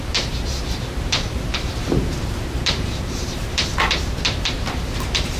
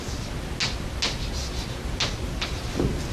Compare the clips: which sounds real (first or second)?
second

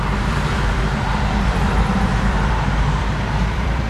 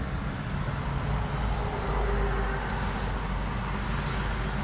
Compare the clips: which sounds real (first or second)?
second